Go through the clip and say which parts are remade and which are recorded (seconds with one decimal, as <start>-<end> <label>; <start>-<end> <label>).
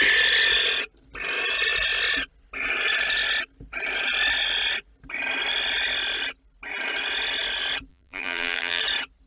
0.0-7.9 recorded; 7.9-8.8 remade; 8.8-9.3 recorded